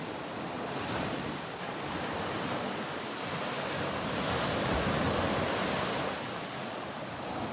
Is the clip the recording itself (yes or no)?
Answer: yes